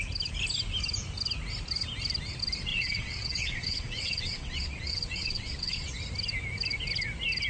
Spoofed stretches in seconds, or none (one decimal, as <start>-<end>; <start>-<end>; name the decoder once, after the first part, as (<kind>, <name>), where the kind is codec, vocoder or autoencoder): 2.7-5.9 (vocoder, WaveNeXt)